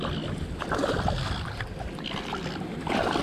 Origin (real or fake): real